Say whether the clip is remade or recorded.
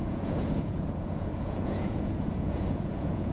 remade